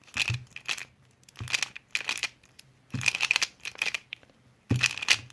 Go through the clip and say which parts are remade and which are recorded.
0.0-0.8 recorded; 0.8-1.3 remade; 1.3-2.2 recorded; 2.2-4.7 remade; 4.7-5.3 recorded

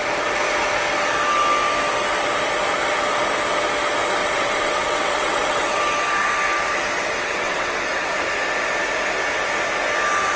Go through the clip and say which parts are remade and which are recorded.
0.0-4.2 recorded; 4.2-5.8 remade; 5.8-7.2 recorded; 7.2-8.1 remade; 8.1-10.4 recorded

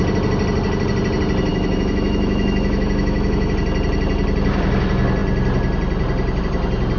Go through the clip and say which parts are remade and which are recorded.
0.0-1.5 recorded; 1.5-3.5 remade; 3.5-7.0 recorded

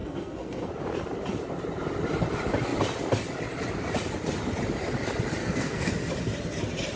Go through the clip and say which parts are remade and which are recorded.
0.0-0.7 remade; 0.7-5.4 recorded; 5.4-5.9 remade; 5.9-7.0 recorded

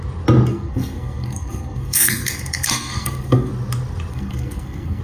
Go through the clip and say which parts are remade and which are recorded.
0.0-0.5 recorded; 0.5-3.5 remade; 3.5-4.1 recorded; 4.1-5.0 remade

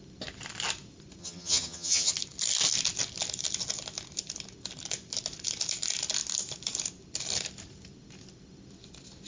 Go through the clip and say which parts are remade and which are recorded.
0.0-1.2 recorded; 1.2-2.1 remade; 2.1-9.3 recorded

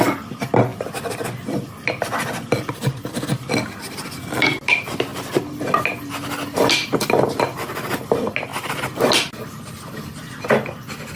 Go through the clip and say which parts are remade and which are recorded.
0.0-8.5 recorded; 8.5-9.8 remade; 9.8-11.2 recorded

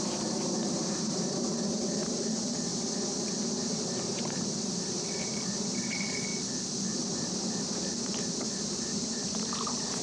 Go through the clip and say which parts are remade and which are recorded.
0.0-2.7 remade; 2.7-3.6 recorded; 3.6-6.3 remade; 6.3-6.9 recorded; 6.9-10.0 remade